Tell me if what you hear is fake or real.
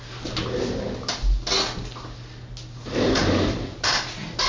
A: real